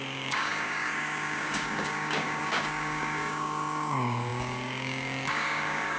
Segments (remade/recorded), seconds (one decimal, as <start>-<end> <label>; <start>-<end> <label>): 0.0-6.0 remade

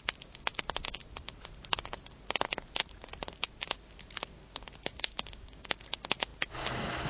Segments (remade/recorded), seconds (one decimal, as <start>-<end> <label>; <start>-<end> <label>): 0.0-5.1 recorded; 5.1-5.8 remade; 5.8-7.1 recorded

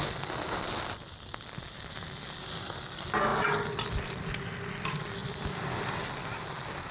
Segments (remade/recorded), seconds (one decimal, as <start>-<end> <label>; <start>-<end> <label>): 0.0-6.9 recorded

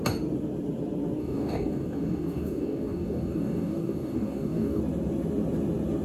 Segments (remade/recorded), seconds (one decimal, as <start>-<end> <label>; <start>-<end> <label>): 0.0-1.2 recorded; 1.2-4.8 remade; 4.8-6.0 recorded